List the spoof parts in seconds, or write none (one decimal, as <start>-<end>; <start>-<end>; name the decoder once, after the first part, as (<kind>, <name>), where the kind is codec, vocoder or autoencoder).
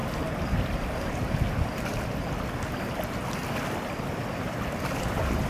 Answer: 0.0-1.2 (vocoder, BigVGAN v2)